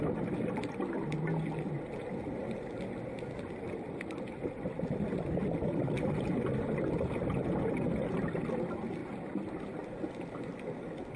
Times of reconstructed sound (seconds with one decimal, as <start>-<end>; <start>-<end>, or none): none